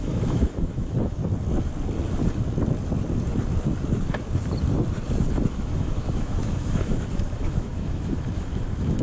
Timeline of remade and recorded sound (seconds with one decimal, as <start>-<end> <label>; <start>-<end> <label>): 0.0-1.2 remade; 1.2-5.5 recorded; 5.5-9.0 remade